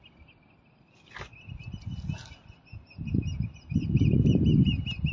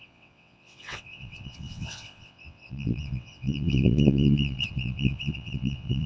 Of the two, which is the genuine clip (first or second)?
first